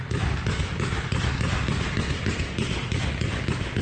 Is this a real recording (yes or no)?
yes